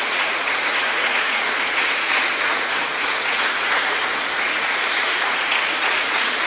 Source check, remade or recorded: remade